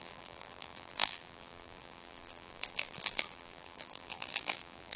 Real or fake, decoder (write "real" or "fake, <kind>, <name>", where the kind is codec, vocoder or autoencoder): fake, vocoder, BigVGAN v2